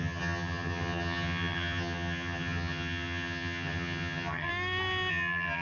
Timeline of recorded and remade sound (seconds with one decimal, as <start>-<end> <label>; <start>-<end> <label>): 0.0-4.5 remade; 4.5-5.1 recorded; 5.1-5.6 remade